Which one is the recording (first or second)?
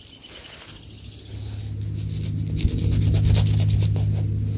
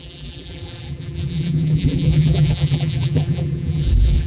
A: first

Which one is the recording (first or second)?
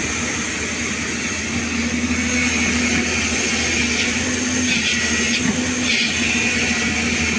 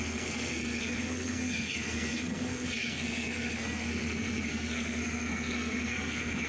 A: first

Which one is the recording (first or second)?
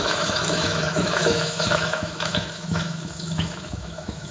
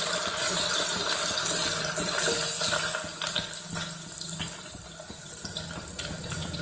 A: second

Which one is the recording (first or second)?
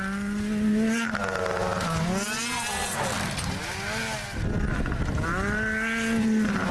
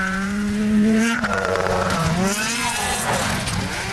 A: first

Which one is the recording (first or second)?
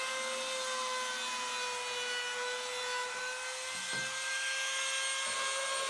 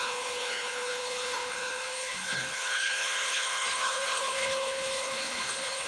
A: first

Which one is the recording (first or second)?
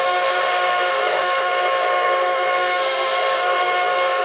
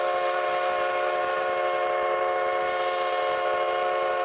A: second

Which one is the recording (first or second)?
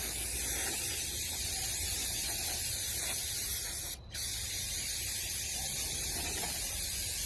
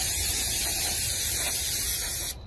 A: first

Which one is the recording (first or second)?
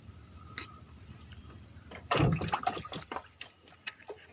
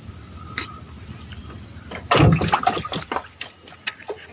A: second